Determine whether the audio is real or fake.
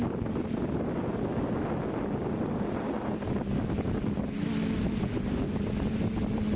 real